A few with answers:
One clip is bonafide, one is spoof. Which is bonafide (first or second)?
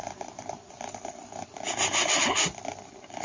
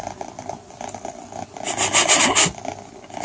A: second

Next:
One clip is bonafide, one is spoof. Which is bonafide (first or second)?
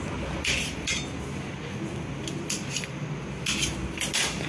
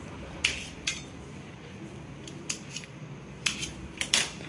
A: first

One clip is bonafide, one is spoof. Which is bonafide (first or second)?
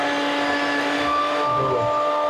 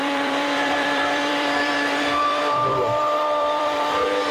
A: first